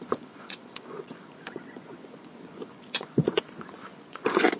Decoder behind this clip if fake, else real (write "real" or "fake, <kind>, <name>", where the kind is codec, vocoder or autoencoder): fake, vocoder, Vocos